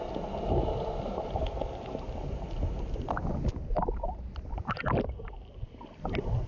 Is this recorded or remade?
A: recorded